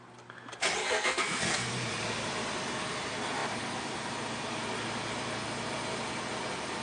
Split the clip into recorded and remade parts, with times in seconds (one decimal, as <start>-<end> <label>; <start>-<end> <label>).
0.0-0.8 recorded; 0.8-1.7 remade; 1.7-6.8 recorded